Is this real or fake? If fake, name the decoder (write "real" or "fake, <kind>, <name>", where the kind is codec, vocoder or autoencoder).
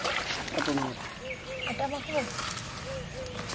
real